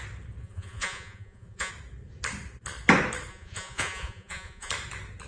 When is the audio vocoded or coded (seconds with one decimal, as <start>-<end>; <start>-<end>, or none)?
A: 0.4-1.7; 3.3-4.7